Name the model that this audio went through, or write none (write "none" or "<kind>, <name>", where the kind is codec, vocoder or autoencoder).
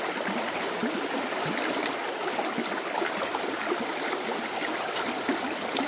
none